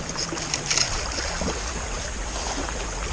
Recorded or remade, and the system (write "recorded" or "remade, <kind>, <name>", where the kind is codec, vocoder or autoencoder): recorded